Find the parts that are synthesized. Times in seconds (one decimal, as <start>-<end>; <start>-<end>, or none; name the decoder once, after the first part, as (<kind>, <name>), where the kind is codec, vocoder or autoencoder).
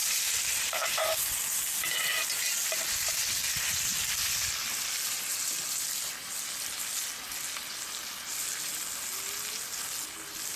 0.0-1.0 (vocoder, BigVGAN v2)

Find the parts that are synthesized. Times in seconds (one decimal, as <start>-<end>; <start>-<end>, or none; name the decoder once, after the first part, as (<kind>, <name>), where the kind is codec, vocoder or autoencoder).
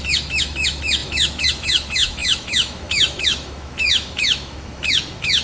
0.0-5.4 (autoencoder, DAC-VAE)